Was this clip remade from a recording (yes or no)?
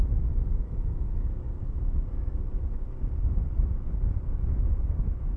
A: no